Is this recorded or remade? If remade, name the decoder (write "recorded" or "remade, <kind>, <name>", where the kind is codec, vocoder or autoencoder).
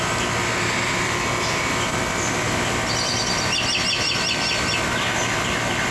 recorded